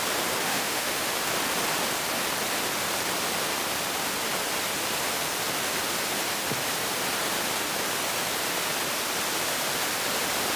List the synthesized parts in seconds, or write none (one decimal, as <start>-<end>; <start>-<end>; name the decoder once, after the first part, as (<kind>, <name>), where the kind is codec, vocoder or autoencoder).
0.4-1.1 (autoencoder, DAC-VAE)